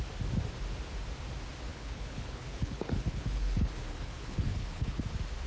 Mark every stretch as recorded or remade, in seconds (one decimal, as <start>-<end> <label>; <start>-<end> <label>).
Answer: 0.0-1.7 recorded; 1.7-5.0 remade; 5.0-5.5 recorded